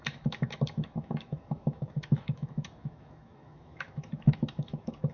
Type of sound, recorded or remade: remade